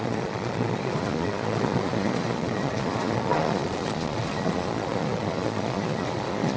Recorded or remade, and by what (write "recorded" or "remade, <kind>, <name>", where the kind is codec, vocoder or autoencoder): remade, vocoder, Vocos